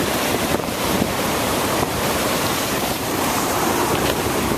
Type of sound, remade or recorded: remade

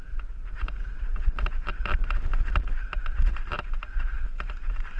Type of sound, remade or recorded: remade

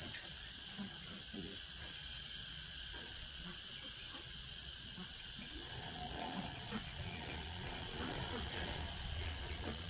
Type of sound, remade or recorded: remade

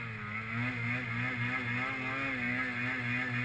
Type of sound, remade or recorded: recorded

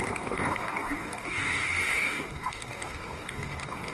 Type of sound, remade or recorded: remade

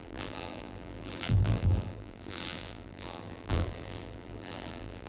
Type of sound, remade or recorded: remade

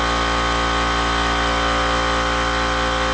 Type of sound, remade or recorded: recorded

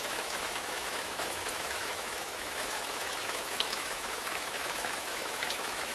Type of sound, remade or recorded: remade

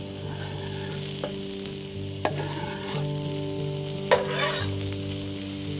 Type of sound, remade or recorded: recorded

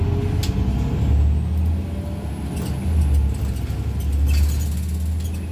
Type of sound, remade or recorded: recorded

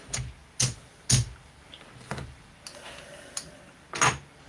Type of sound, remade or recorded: recorded